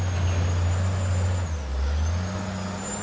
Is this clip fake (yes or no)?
no